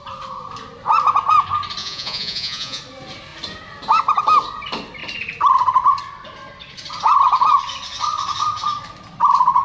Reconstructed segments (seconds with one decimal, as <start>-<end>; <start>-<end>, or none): 1.8-2.8